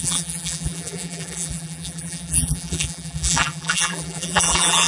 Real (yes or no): no